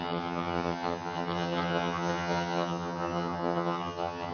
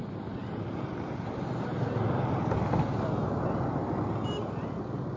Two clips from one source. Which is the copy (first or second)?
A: first